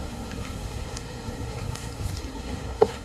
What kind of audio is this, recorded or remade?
remade